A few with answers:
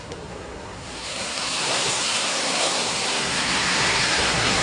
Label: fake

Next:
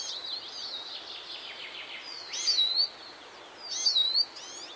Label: real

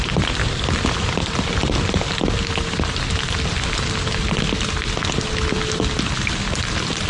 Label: real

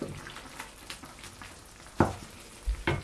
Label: real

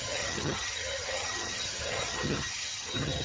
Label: fake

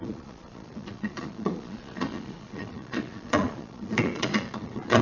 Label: fake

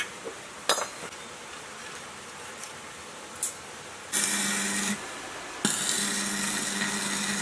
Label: real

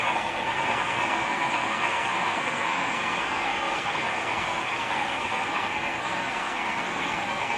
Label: fake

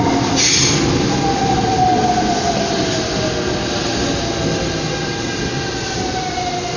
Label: real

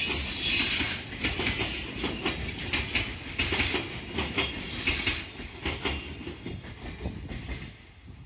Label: real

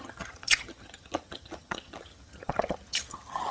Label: fake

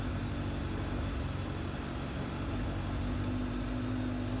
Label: real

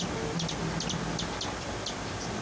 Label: real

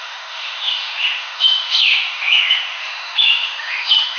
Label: fake